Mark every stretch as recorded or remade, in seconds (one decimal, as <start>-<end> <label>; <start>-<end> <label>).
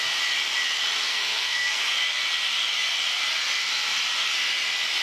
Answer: 0.0-1.1 recorded; 1.1-1.8 remade; 1.8-5.0 recorded